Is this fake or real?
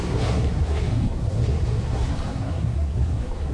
fake